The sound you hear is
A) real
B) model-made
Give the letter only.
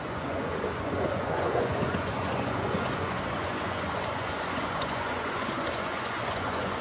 B